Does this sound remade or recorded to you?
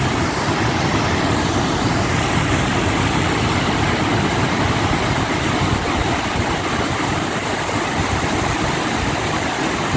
recorded